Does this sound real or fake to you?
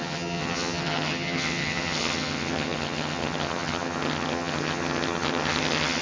fake